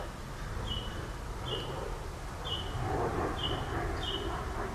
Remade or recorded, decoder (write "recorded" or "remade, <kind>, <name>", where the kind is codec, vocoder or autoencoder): recorded